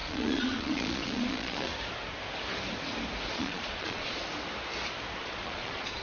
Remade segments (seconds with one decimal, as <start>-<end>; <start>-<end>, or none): 0.0-1.7; 3.3-4.2; 5.2-6.0